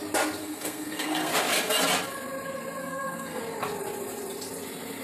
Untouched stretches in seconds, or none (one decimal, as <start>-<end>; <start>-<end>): 0.0-0.4; 1.3-2.8; 3.4-5.0